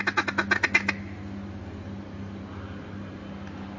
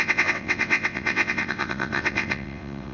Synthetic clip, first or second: second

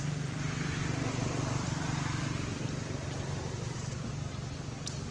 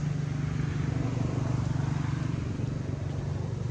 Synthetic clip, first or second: first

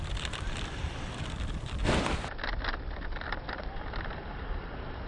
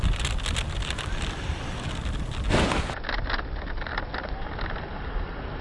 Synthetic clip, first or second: first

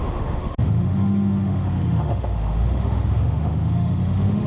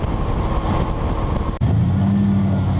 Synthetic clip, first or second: first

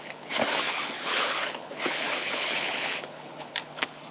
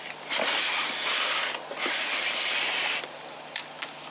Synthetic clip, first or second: first